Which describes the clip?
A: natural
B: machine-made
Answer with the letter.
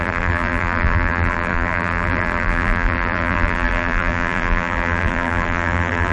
B